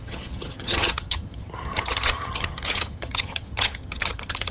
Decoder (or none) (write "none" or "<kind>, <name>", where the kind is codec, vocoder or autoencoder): vocoder, HiFi-GAN